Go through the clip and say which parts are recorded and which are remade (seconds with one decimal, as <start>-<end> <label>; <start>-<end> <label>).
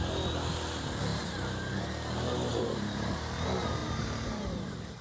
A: 0.0-1.1 recorded; 1.1-1.8 remade; 1.8-2.5 recorded; 2.5-3.1 remade; 3.1-3.8 recorded; 3.8-5.0 remade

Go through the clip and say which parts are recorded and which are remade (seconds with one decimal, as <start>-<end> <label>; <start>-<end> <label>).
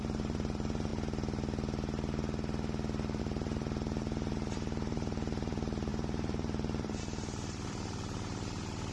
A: 0.0-0.9 remade; 0.9-3.2 recorded; 3.2-8.9 remade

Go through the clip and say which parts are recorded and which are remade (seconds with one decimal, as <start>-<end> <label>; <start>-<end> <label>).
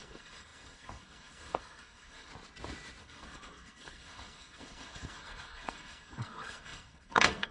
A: 0.0-2.3 remade; 2.3-3.0 recorded; 3.0-7.5 remade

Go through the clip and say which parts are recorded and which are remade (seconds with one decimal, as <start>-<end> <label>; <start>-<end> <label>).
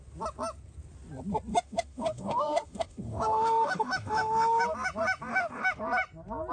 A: 0.0-1.5 recorded; 1.5-4.6 remade; 4.6-5.3 recorded; 5.3-5.8 remade; 5.8-6.5 recorded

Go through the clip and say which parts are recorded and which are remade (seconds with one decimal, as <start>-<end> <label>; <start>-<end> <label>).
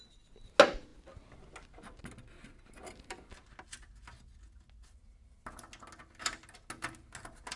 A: 0.0-7.6 recorded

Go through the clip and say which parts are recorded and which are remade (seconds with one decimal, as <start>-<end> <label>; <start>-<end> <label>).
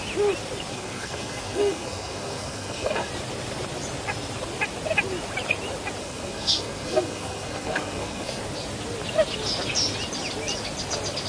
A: 0.0-0.7 recorded; 0.7-3.1 remade; 3.1-6.0 recorded; 6.0-8.4 remade; 8.4-11.3 recorded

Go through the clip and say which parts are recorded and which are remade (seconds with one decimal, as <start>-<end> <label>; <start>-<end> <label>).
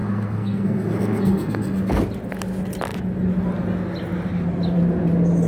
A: 0.0-2.0 remade; 2.0-5.5 recorded